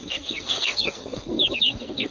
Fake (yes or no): yes